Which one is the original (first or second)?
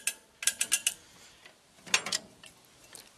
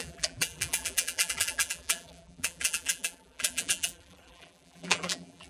first